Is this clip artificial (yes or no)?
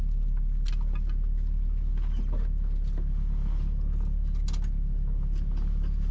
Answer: no